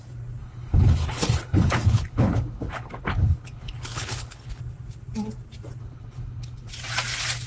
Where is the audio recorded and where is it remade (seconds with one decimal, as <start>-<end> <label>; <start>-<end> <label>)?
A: 0.0-0.4 recorded; 0.4-4.6 remade; 4.6-5.8 recorded; 5.8-6.7 remade; 6.7-7.5 recorded